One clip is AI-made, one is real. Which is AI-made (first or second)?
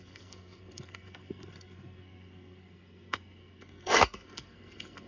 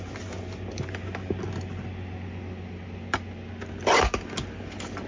first